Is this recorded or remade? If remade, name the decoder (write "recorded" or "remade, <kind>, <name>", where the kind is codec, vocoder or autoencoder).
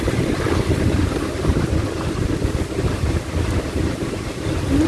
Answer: recorded